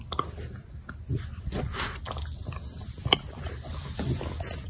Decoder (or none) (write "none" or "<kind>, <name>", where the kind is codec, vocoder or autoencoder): none